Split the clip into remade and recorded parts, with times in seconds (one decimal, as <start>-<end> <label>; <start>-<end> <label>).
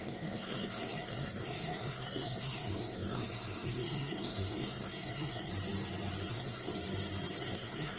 0.0-5.5 remade; 5.5-6.3 recorded; 6.3-6.7 remade; 6.7-7.4 recorded; 7.4-8.0 remade